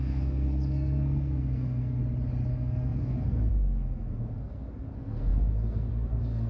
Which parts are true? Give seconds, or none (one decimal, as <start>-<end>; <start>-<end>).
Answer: 2.0-2.5